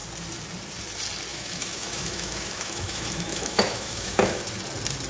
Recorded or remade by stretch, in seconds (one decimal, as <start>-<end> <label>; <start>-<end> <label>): 0.0-1.3 recorded; 1.3-4.4 remade; 4.4-5.1 recorded